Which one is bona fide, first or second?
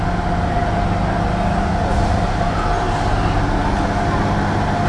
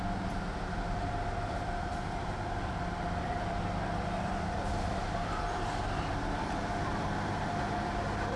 first